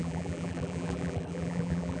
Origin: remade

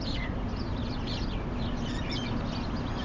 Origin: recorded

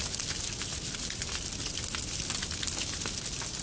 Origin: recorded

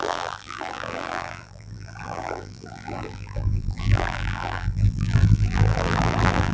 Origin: remade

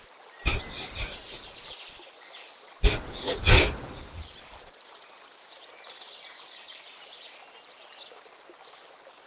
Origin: recorded